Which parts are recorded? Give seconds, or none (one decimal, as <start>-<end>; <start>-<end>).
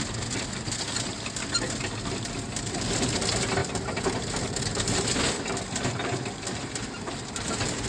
0.0-7.9